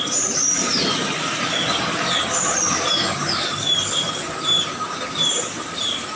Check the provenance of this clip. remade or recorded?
remade